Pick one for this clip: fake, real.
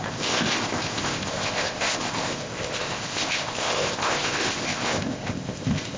fake